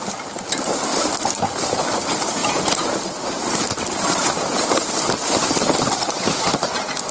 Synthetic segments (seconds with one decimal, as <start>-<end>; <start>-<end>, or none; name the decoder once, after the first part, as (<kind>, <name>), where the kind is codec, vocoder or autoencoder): 0.0-0.9 (vocoder, BigVGAN v2); 1.7-7.1